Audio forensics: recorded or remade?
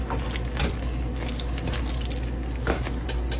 recorded